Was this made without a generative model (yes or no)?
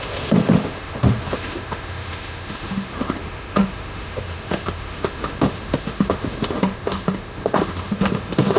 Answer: no